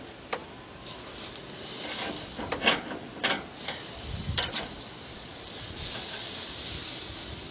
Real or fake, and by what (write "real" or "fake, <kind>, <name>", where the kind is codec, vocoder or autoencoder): real